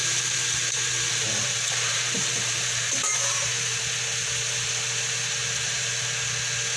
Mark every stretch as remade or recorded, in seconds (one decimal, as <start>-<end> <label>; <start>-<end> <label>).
0.0-3.8 remade; 3.8-5.4 recorded; 5.4-5.9 remade; 5.9-6.8 recorded